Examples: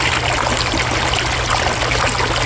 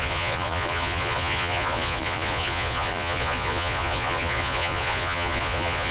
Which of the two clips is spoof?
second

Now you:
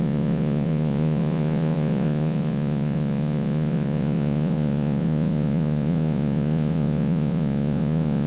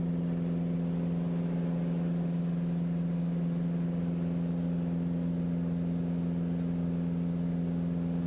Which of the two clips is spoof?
first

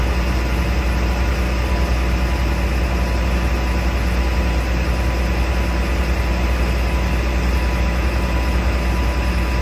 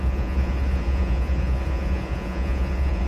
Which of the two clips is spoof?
second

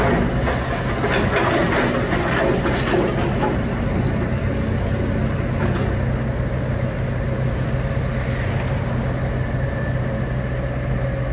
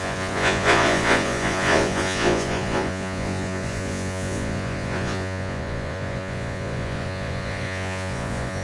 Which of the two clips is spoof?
second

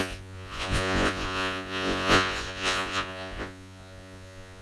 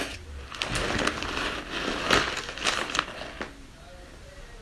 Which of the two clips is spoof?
first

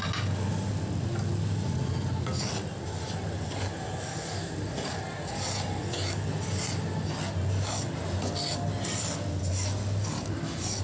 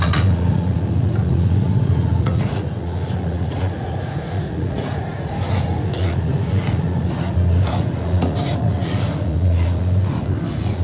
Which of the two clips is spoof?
second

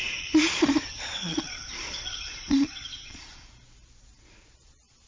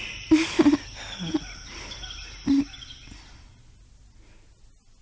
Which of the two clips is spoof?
first